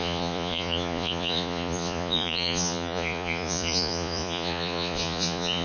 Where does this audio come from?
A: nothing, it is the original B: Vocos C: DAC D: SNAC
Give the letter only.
B